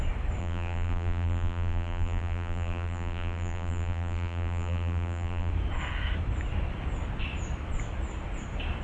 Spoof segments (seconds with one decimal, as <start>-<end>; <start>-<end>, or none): 0.4-5.5